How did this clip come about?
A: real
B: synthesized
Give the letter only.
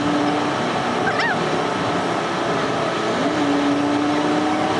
A